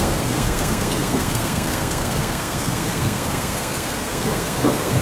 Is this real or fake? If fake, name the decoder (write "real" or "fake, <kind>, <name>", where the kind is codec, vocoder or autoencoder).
fake, codec, SNAC